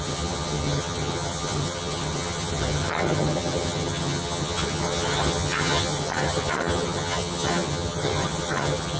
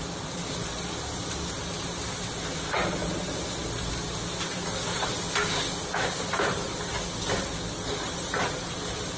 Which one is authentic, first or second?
second